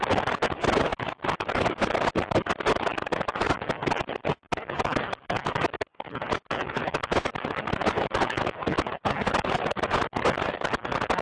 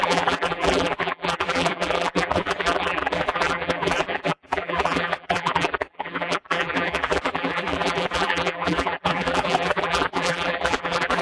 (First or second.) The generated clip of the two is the second